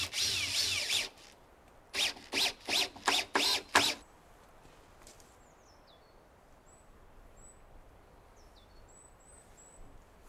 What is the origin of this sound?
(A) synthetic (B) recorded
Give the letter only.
B